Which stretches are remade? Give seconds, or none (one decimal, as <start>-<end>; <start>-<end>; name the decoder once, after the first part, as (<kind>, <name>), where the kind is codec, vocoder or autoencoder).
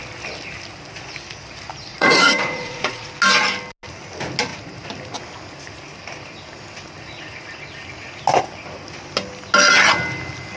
1.9-3.1 (vocoder, Vocos)